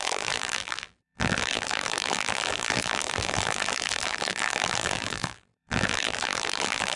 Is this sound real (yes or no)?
no